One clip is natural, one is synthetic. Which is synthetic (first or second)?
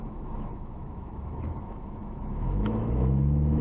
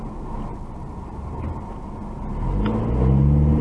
first